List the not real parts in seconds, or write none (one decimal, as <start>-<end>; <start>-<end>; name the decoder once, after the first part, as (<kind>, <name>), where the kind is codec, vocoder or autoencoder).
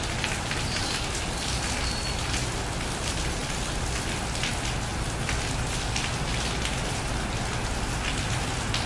none